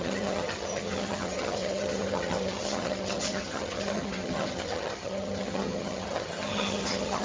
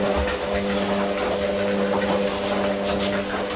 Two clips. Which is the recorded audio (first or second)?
second